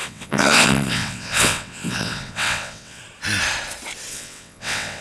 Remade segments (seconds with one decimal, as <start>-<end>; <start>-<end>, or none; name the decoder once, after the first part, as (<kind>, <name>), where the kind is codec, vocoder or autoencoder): 0.0-3.0 (vocoder, WaveNeXt); 4.1-5.0